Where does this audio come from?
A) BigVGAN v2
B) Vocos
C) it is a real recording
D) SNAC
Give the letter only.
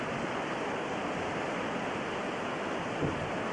C